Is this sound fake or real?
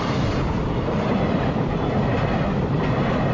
real